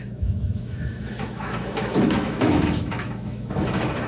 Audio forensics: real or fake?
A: fake